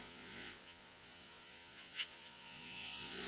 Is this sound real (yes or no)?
no